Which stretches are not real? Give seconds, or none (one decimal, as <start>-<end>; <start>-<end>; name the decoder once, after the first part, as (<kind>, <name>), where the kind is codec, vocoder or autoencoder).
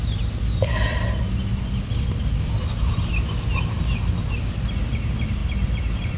none